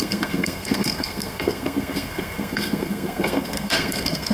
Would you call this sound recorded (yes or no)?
no